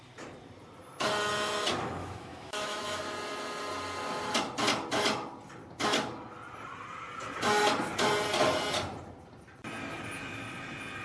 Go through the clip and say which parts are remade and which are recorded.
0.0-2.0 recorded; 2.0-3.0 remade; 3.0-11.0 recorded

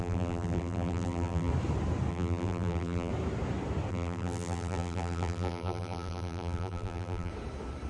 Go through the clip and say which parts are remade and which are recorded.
0.0-1.5 remade; 1.5-2.1 recorded; 2.1-3.1 remade; 3.1-3.9 recorded; 3.9-7.3 remade; 7.3-7.9 recorded

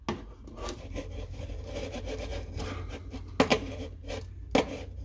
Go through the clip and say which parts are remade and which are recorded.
0.0-2.3 recorded; 2.3-2.9 remade; 2.9-3.5 recorded; 3.5-4.1 remade; 4.1-5.0 recorded

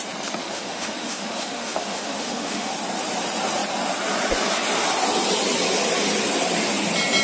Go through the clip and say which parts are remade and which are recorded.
0.0-0.4 recorded; 0.4-2.7 remade; 2.7-7.2 recorded

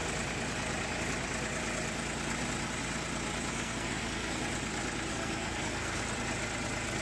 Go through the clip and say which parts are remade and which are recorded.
0.0-3.5 recorded; 3.5-4.4 remade; 4.4-5.1 recorded; 5.1-6.0 remade; 6.0-7.0 recorded

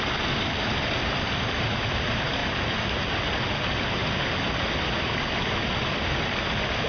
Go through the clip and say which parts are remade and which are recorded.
0.0-6.9 recorded

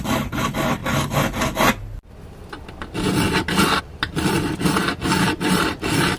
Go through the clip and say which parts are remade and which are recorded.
0.0-0.8 remade; 0.8-3.8 recorded; 3.8-6.2 remade

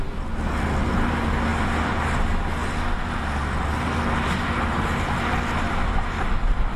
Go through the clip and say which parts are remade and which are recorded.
0.0-1.5 recorded; 1.5-2.1 remade; 2.1-6.8 recorded